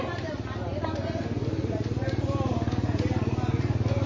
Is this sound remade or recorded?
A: recorded